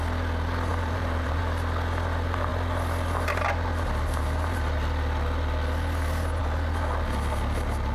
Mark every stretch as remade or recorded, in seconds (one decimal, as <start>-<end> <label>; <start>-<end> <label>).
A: 0.0-0.7 recorded; 0.7-1.4 remade; 1.4-7.9 recorded